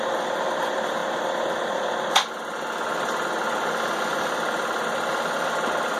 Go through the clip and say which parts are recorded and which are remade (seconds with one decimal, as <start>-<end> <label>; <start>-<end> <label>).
0.0-6.0 recorded